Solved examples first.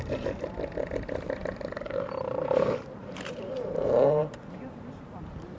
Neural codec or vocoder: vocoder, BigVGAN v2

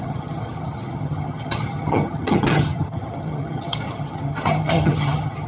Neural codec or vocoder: vocoder, HiFi-GAN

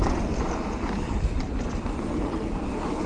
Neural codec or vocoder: none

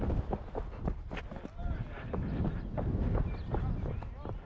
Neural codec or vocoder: none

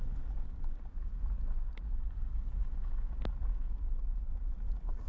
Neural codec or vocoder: none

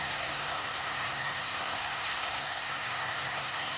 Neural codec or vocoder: codec, SNAC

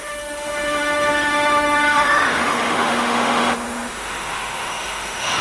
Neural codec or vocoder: autoencoder, DAC-VAE